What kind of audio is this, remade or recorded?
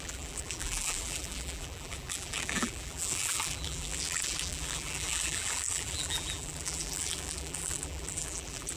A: remade